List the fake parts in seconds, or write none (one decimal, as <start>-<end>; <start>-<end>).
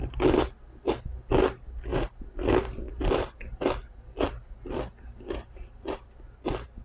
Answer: none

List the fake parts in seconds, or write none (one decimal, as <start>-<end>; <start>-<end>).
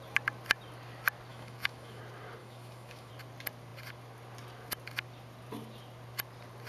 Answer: 1.3-2.0; 2.4-3.1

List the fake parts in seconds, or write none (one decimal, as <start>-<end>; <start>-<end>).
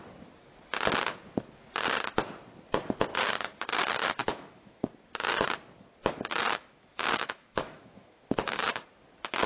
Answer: 4.2-4.9; 6.4-8.8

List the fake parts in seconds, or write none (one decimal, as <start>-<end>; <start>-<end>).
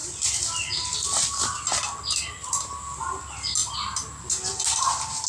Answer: none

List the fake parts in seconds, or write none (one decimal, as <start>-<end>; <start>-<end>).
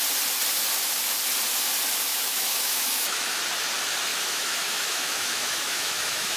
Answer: 2.1-3.4; 4.1-6.4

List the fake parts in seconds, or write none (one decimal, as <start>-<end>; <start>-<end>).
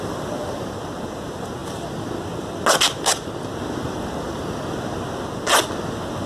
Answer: none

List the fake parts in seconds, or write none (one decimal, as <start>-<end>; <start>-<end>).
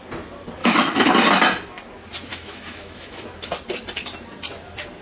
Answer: 0.6-1.1; 2.3-3.5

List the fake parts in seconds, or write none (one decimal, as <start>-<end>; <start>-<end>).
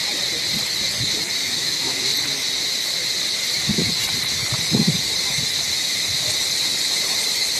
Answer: 1.4-2.0